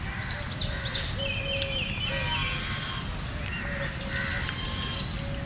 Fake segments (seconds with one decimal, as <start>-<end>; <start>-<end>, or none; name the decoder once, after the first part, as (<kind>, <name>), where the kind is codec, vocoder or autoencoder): none